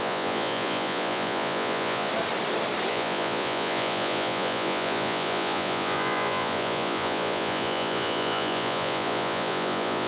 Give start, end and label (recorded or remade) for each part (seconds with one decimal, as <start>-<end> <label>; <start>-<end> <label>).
0.0-2.1 remade; 2.1-2.9 recorded; 2.9-10.1 remade